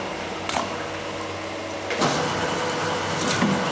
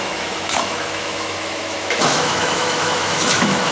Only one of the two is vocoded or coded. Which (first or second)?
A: second